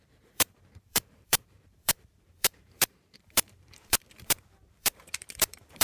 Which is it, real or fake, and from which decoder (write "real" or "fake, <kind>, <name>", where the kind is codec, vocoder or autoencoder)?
fake, vocoder, BigVGAN v2